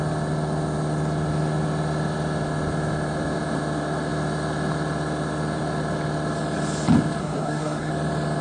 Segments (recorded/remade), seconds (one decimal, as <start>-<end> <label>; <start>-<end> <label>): 0.0-7.2 recorded; 7.2-7.9 remade; 7.9-8.4 recorded